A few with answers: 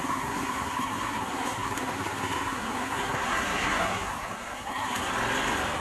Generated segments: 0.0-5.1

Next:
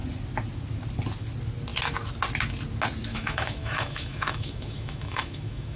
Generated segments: 3.1-5.8

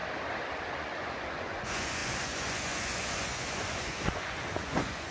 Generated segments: 0.7-5.1

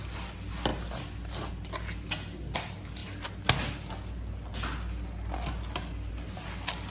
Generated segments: none

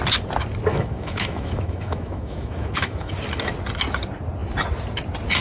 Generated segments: 0.7-3.1

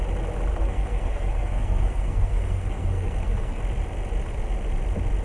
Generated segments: 0.5-3.6